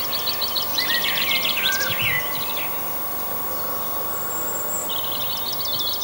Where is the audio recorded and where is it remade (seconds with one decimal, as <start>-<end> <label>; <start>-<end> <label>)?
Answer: 0.0-0.7 recorded; 0.7-1.7 remade; 1.7-4.8 recorded; 4.8-5.6 remade; 5.6-6.0 recorded